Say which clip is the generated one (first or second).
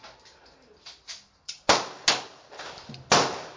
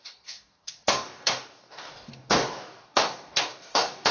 second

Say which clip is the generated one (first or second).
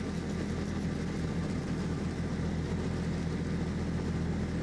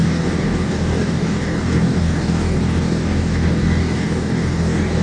second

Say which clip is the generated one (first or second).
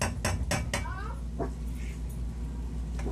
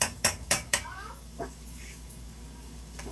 second